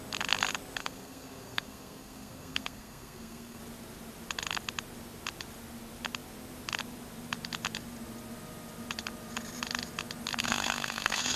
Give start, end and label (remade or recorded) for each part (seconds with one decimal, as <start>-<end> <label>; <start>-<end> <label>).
0.0-0.8 recorded; 0.8-3.6 remade; 3.6-10.4 recorded; 10.4-11.4 remade